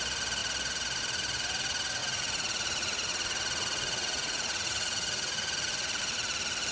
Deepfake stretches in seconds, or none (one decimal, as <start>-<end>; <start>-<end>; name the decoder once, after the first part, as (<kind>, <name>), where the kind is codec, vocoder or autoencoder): 2.0-6.0 (vocoder, Vocos)